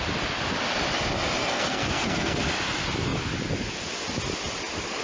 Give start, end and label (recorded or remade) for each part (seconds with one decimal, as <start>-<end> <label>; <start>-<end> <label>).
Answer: 0.0-1.4 recorded; 1.4-2.4 remade; 2.4-5.0 recorded